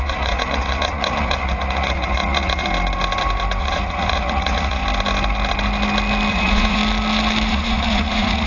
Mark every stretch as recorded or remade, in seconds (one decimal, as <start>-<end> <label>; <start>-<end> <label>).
0.0-2.7 remade; 2.7-3.6 recorded; 3.6-4.8 remade; 4.8-6.3 recorded; 6.3-6.8 remade; 6.8-7.5 recorded; 7.5-8.5 remade